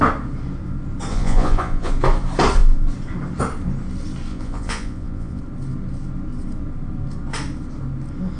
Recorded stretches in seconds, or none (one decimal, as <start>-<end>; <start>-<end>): 0.0-1.1; 1.9-4.3; 5.4-8.4